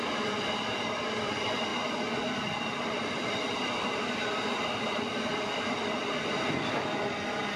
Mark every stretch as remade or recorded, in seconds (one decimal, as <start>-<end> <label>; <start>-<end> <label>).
0.0-7.6 recorded